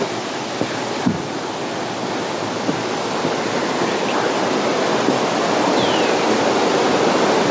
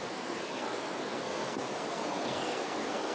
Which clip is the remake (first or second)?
second